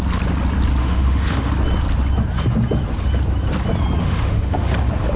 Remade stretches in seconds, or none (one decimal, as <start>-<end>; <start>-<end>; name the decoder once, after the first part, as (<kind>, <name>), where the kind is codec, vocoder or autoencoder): 0.8-1.5 (autoencoder, DAC-VAE); 4.0-4.7